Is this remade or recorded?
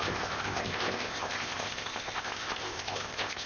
remade